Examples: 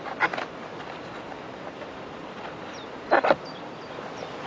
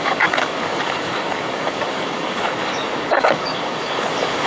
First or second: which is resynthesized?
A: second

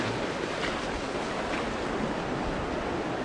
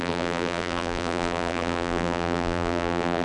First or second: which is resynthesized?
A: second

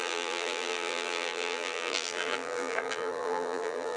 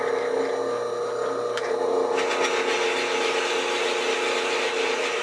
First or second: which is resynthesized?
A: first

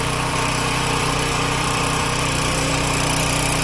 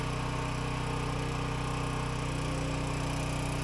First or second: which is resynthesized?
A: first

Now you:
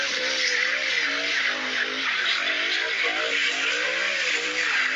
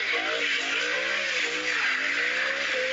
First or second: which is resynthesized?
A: first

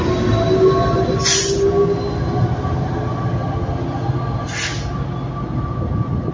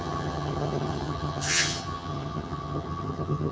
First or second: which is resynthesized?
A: second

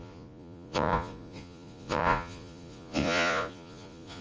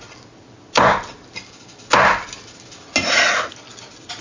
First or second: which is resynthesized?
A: first